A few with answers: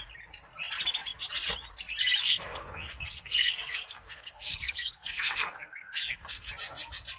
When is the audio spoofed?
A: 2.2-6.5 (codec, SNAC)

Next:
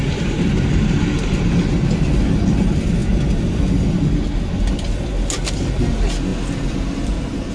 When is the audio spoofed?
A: none

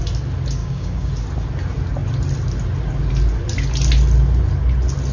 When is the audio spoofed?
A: 0.6-1.1 (codec, DAC)

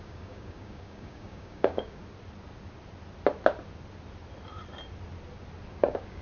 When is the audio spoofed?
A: 0.0-2.0 (codec, DAC); 5.7-6.2

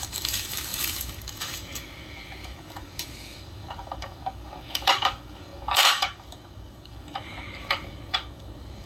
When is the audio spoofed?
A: 0.0-8.9 (codec, DAC)